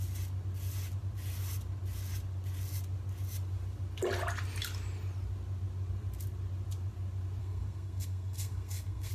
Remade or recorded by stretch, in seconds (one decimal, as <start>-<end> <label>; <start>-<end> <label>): 0.0-7.4 recorded; 7.4-9.1 remade